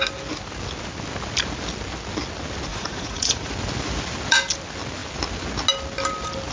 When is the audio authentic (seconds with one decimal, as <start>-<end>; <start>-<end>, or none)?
0.0-2.7; 3.5-6.5